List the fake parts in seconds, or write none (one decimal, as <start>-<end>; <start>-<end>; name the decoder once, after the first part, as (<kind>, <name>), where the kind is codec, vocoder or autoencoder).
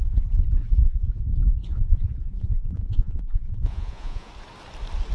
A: 0.6-1.2 (vocoder, Vocos); 1.6-4.3